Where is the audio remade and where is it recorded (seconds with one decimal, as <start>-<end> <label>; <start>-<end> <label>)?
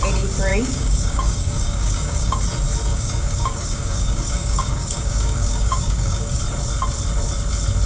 0.0-0.5 recorded; 0.5-2.4 remade; 2.4-2.9 recorded; 2.9-6.4 remade; 6.4-7.9 recorded